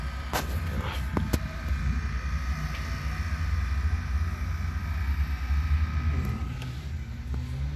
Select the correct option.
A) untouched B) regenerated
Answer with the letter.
A